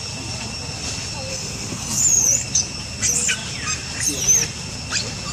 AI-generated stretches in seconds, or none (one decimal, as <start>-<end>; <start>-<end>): 1.3-2.0

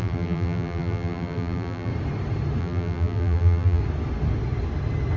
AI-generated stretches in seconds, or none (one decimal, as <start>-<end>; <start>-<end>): 0.0-1.9; 2.6-3.8

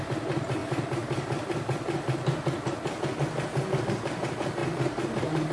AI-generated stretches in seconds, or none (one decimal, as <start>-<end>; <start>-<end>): 4.6-5.5

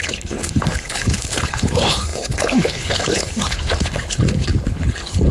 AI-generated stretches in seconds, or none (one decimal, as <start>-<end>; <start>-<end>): 0.0-5.3

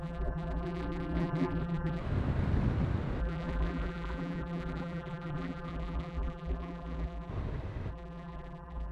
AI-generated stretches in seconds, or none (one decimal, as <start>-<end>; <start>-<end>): 0.0-2.0; 3.2-7.3; 7.9-8.9

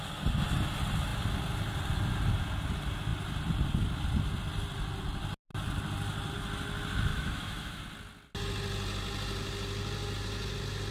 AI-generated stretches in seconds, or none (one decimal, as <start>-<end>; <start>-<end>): 7.1-7.8